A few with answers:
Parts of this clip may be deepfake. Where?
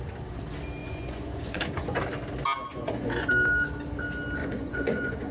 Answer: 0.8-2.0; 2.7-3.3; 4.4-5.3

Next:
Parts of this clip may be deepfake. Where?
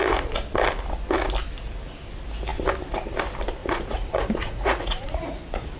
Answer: 3.6-5.8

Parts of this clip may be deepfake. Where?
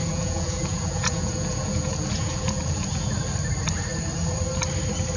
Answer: 0.0-3.1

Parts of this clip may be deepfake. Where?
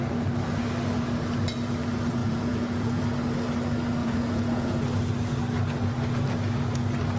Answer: 2.2-3.0; 4.0-4.8